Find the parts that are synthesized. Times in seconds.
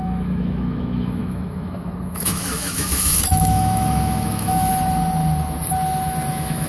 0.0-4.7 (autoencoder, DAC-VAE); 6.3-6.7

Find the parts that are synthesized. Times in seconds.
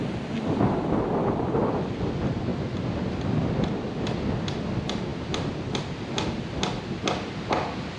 none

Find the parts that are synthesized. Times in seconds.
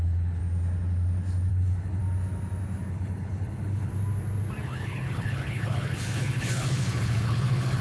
0.0-0.4 (codec, HILCodec); 1.5-2.0; 2.9-3.9; 4.6-7.8